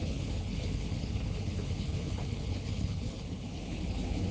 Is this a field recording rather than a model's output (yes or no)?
no